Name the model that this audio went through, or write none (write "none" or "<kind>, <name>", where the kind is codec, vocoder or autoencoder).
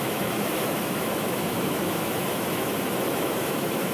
autoencoder, DAC-VAE